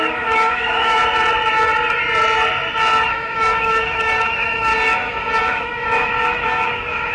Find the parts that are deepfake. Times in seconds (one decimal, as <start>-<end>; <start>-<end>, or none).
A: 0.0-1.0; 3.1-4.7; 5.4-7.1